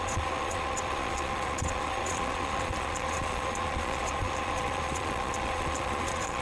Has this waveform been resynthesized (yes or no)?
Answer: yes